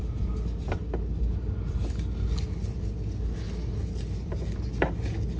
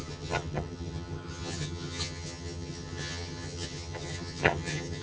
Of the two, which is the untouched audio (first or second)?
first